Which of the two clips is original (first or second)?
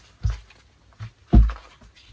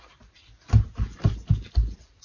first